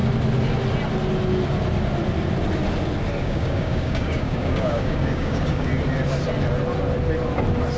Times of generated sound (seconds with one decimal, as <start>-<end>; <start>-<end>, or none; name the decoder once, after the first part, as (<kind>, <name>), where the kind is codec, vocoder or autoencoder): 3.2-5.7 (codec, DAC)